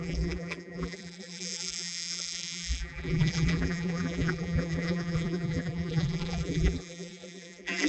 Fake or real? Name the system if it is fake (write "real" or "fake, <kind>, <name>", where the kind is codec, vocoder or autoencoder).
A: fake, vocoder, BigVGAN v2